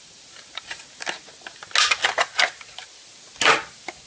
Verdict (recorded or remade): recorded